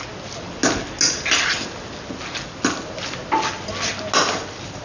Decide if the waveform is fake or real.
real